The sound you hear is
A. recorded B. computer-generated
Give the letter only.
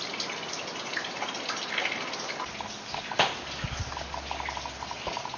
A